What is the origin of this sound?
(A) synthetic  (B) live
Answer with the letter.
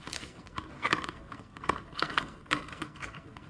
A